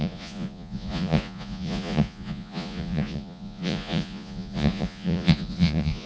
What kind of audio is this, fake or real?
fake